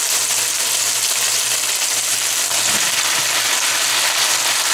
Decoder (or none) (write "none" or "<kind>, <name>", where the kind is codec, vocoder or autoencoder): none